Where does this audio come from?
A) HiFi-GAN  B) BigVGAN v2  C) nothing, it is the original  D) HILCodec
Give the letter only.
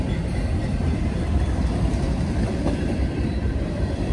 B